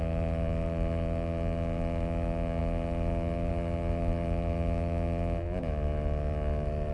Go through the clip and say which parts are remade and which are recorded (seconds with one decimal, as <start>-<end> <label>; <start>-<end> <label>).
0.0-6.9 remade